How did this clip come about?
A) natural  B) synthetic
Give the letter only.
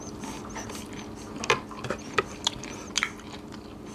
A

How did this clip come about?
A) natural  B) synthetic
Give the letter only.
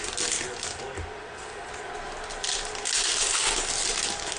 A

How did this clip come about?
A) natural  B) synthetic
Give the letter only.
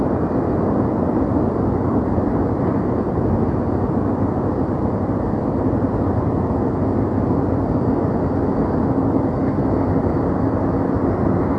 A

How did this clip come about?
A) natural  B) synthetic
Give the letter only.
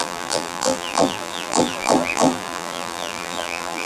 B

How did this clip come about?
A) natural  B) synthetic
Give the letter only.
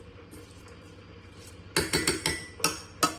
A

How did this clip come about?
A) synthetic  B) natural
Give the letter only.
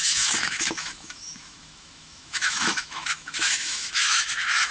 A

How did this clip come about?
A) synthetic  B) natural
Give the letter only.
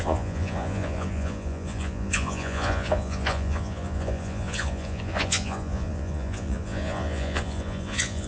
A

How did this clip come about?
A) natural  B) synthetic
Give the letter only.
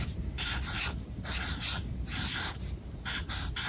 B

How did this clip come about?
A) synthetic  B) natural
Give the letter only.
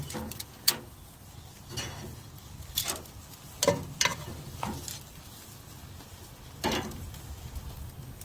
B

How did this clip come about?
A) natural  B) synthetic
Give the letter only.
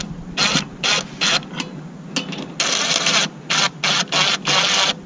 A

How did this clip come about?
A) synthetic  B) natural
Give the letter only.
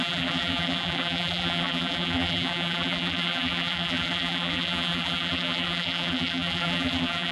A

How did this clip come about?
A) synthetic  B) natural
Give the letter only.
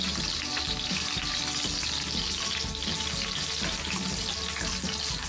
B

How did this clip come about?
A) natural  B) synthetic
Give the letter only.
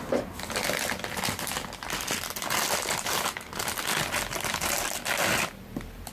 A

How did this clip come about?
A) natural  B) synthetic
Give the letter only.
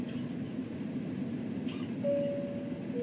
A